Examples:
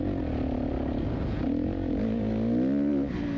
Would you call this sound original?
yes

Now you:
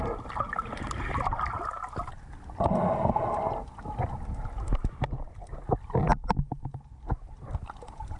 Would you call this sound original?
yes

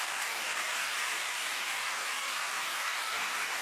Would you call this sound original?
no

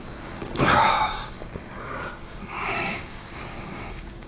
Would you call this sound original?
no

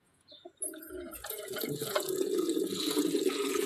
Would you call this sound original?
no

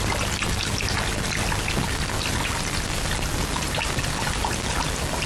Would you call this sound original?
yes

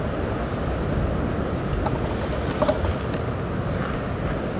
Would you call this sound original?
yes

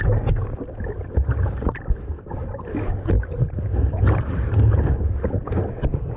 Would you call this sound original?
yes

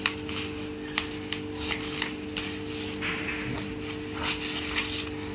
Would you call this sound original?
yes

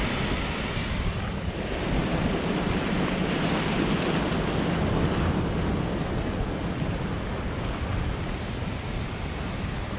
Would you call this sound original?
yes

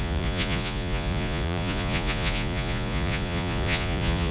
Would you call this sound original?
no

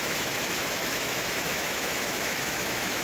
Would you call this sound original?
no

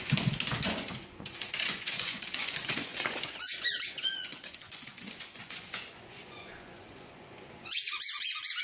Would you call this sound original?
no